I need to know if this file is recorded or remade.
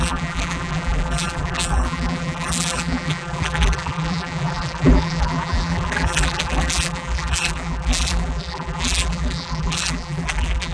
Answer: remade